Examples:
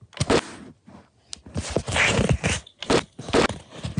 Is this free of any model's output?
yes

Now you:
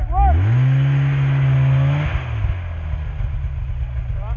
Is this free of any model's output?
yes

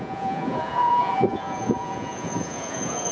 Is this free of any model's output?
no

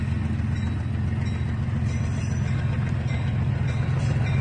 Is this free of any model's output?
yes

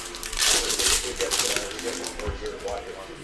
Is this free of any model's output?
yes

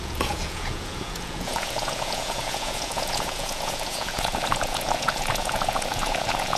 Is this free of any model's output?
no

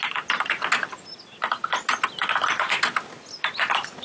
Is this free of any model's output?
yes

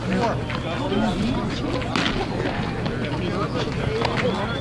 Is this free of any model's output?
yes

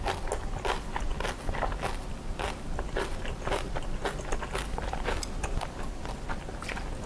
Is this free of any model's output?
yes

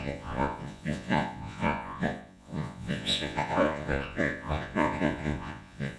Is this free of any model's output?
no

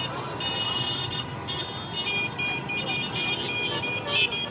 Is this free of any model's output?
yes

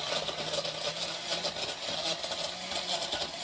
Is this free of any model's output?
yes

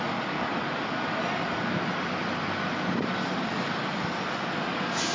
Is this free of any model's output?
yes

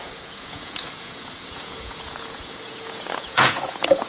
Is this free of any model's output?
no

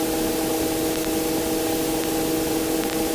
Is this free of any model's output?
yes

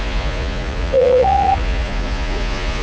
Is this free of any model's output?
no